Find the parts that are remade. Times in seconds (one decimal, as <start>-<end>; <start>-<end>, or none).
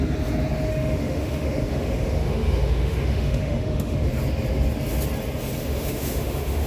0.7-4.1; 5.6-6.7